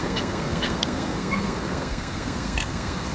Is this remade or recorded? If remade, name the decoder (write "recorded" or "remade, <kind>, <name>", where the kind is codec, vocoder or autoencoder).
remade, codec, SNAC